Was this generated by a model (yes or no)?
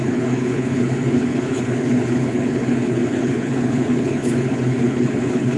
yes